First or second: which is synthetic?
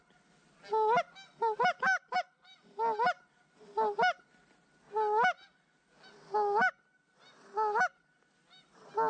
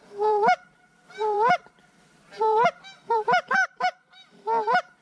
second